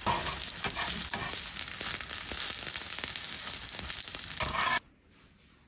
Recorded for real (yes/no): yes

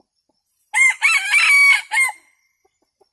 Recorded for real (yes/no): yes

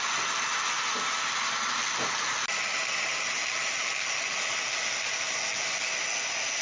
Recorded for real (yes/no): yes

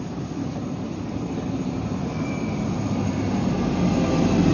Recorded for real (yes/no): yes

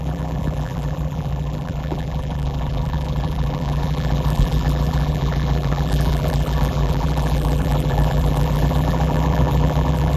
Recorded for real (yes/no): no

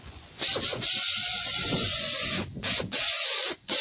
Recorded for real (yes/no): no